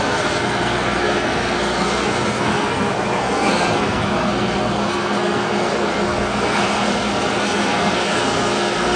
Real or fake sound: fake